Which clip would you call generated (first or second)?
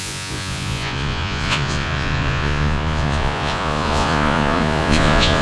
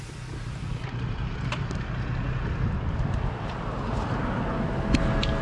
first